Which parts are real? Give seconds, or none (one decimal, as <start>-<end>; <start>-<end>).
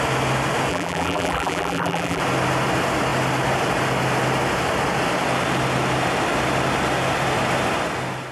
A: 0.0-0.7; 2.2-8.3